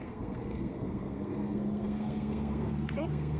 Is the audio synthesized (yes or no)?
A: yes